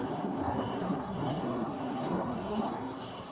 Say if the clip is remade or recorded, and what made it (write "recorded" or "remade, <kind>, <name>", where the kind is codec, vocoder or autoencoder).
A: remade, codec, SNAC